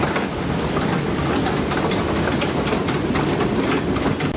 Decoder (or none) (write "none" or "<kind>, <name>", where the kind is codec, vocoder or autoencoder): none